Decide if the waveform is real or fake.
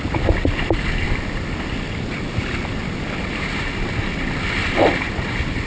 real